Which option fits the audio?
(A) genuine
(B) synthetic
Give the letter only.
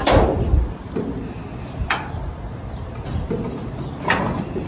A